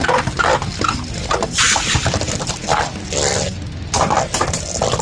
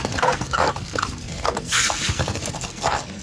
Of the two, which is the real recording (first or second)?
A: first